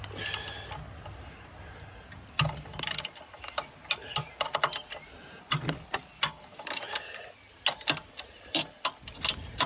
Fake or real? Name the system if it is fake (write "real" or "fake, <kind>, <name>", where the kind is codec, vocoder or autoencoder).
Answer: real